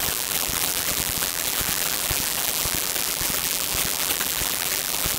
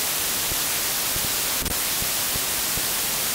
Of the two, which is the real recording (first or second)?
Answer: second